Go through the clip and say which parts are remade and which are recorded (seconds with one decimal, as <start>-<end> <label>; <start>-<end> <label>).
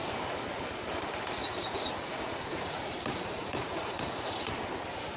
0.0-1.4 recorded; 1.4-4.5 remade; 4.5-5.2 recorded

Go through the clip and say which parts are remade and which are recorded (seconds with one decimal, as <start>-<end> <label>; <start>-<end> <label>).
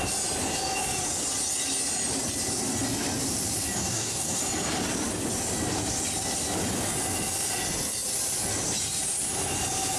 0.0-3.8 recorded; 3.8-4.4 remade; 4.4-10.0 recorded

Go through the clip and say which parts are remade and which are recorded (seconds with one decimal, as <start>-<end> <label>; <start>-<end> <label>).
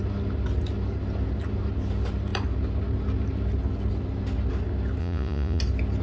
0.0-5.0 recorded; 5.0-5.6 remade; 5.6-6.0 recorded